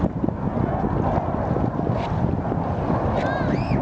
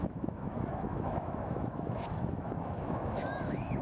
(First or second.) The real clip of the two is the first